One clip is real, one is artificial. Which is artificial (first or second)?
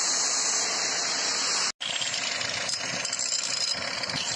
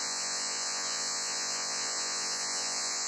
second